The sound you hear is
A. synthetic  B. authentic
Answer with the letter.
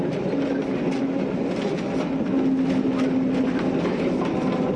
B